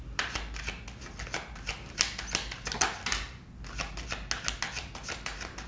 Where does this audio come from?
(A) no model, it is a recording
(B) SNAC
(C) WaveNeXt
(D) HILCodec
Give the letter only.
A